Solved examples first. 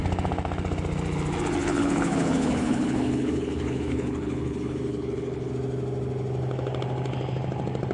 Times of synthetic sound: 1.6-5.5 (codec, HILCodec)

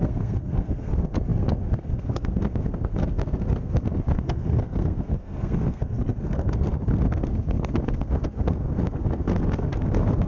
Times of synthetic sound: 0.0-10.3 (codec, SNAC)

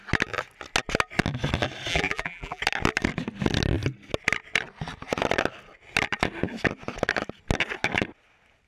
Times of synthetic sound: 1.9-2.6 (vocoder, BigVGAN v2)